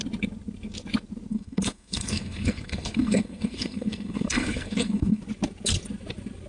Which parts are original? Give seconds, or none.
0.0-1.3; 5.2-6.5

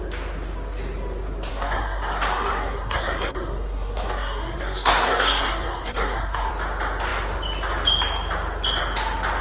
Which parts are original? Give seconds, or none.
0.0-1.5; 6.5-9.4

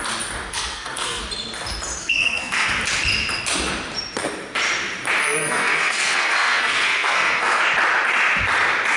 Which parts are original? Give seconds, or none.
0.0-0.5; 1.2-2.0; 2.7-5.2; 7.6-9.0

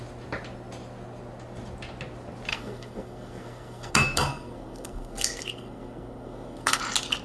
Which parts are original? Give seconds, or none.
0.0-2.5; 6.8-7.2